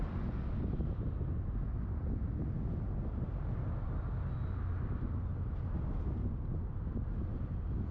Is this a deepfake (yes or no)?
no